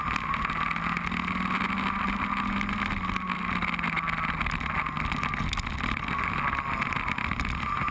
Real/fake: real